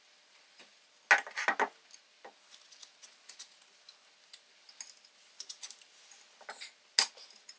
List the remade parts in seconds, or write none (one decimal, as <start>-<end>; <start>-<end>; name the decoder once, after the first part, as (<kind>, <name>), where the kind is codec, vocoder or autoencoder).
none